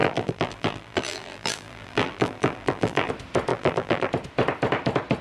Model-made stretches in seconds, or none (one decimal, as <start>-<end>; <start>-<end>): 0.0-3.1; 3.5-4.1